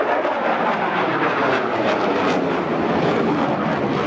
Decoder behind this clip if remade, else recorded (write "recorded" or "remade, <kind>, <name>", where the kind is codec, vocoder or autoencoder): remade, vocoder, BigVGAN v2